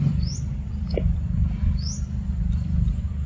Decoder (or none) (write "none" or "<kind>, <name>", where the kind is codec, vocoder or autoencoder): vocoder, BigVGAN v2